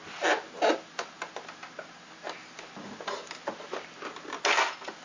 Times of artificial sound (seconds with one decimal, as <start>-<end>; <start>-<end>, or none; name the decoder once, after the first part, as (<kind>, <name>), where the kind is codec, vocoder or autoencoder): none